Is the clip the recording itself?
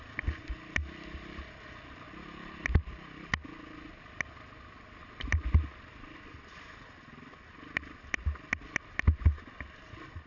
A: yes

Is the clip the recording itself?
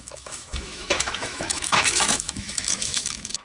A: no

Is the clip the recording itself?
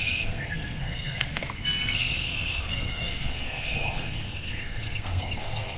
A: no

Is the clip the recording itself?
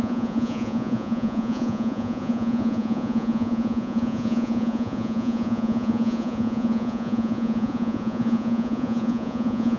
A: no